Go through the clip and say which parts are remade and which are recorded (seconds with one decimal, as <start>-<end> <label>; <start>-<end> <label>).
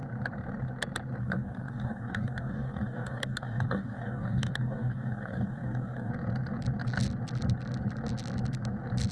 0.0-1.2 recorded; 1.2-6.1 remade; 6.1-9.1 recorded